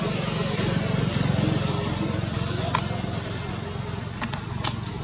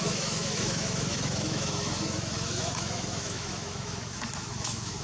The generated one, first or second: second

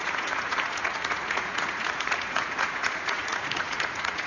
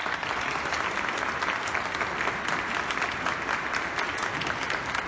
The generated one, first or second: first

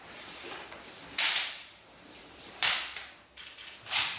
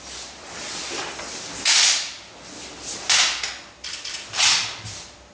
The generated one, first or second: first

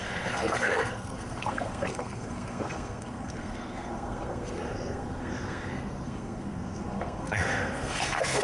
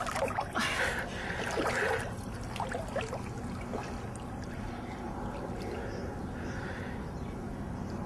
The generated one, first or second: first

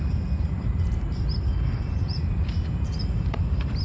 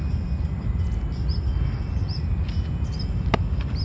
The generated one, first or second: first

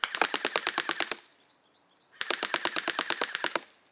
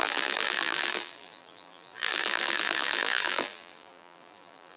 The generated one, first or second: second